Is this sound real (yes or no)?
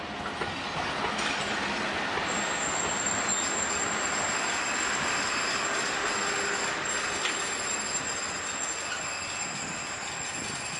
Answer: yes